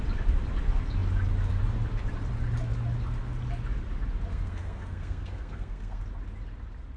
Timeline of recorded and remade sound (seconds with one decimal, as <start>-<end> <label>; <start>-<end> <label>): 0.0-4.3 recorded; 4.3-6.0 remade; 6.0-7.0 recorded